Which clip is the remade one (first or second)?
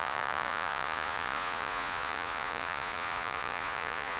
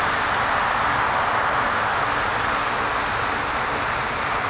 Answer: first